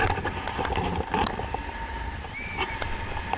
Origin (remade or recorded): recorded